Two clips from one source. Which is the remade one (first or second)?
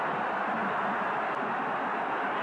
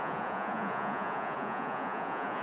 second